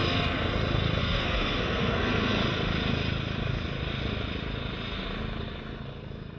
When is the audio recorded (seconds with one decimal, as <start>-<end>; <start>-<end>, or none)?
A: 0.0-1.0; 2.4-6.4

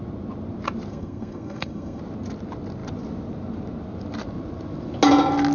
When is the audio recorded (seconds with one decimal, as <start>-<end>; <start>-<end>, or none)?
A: 0.0-0.9; 2.0-5.5

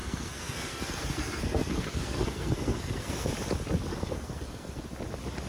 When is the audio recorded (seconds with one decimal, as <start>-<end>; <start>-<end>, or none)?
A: 3.3-3.9; 4.8-5.5

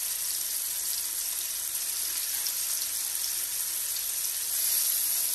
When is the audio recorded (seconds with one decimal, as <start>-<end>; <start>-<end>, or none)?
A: 0.0-5.3

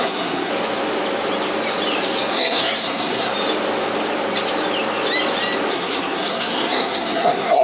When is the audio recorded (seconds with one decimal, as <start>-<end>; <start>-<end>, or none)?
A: 0.5-2.3; 3.3-5.7

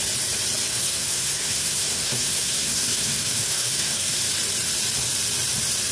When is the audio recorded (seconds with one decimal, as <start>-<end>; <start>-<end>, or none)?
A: 0.0-0.7; 4.2-5.9

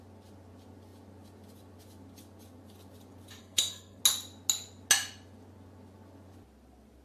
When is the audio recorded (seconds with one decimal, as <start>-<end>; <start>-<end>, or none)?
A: 0.0-3.4; 4.0-7.0